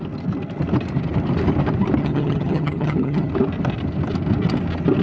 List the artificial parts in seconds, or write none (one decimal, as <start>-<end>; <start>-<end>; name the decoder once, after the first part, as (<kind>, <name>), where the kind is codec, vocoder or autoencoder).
2.0-3.3 (vocoder, HiFi-GAN)